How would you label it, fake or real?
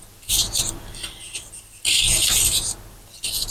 fake